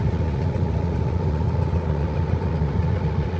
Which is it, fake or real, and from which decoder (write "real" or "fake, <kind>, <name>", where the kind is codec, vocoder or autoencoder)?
fake, vocoder, Vocos